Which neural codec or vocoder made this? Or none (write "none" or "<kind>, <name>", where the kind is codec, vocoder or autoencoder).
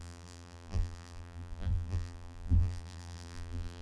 vocoder, BigVGAN v2